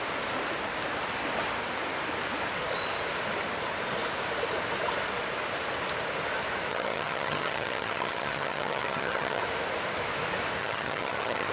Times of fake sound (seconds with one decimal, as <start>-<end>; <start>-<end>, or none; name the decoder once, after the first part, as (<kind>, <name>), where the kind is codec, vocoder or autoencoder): 6.7-9.4 (vocoder, HiFi-GAN); 10.6-11.5